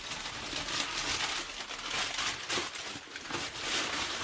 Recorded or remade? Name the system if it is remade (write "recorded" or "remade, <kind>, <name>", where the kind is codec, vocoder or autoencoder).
recorded